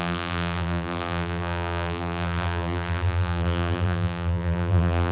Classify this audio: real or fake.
fake